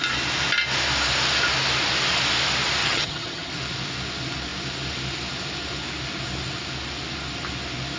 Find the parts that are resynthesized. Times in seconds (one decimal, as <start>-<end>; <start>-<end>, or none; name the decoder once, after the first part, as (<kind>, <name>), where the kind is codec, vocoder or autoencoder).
2.8-3.5 (vocoder, HiFi-GAN)